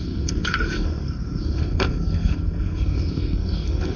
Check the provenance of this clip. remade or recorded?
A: remade